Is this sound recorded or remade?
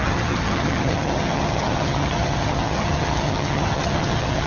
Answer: remade